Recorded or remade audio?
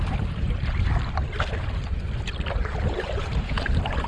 recorded